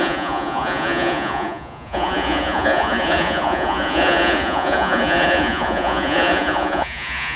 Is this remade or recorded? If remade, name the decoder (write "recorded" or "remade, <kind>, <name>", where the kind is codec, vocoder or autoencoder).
remade, vocoder, Vocos